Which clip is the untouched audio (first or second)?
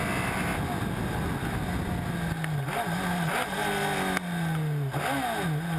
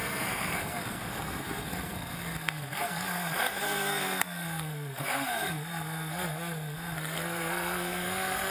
first